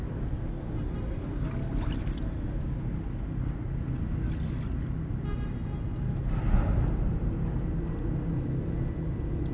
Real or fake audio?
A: real